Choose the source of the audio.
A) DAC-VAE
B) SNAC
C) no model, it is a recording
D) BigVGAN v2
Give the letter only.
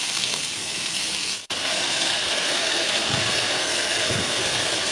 B